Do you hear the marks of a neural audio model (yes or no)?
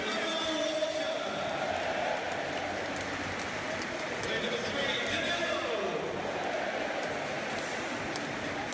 no